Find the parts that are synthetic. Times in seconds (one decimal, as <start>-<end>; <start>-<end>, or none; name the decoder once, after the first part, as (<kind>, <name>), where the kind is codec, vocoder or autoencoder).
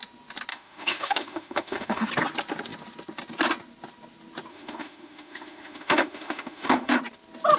0.5-2.1 (autoencoder, DAC-VAE); 4.5-7.0